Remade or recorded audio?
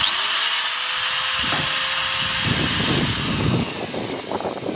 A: recorded